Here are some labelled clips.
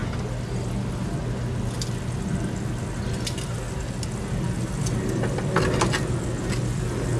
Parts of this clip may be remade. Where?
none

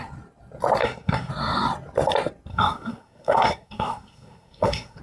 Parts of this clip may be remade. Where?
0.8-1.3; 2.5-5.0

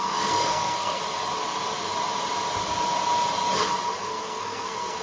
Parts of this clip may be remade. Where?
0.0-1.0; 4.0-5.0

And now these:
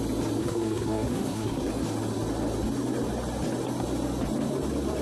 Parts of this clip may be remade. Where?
0.4-1.7